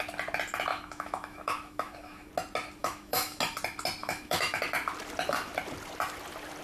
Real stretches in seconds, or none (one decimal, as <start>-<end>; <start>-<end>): 0.0-0.7; 2.3-2.8; 3.4-4.0; 4.6-6.6

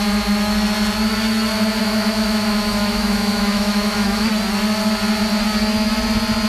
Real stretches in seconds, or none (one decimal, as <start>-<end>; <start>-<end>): 0.0-1.8; 4.3-6.5

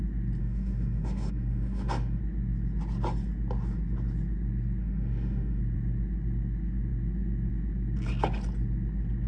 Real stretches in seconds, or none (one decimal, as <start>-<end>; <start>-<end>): 0.0-0.4; 2.2-4.8; 5.6-9.3

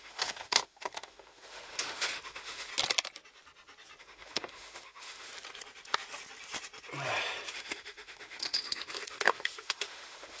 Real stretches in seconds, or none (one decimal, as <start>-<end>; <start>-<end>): 2.7-4.0; 5.3-7.5